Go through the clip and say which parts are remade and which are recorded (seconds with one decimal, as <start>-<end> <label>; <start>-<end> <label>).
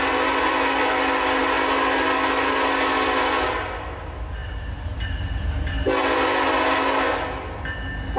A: 0.0-8.2 recorded